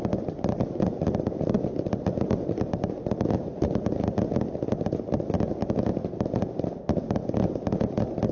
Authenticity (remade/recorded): recorded